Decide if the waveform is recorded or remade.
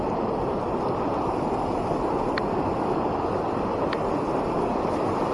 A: recorded